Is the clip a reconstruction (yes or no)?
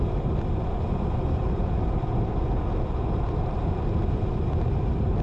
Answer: no